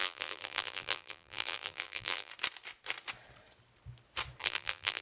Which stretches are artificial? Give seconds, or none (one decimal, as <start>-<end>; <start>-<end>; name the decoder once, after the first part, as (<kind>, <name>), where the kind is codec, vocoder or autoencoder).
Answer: 0.0-2.3 (vocoder, BigVGAN v2); 4.4-5.0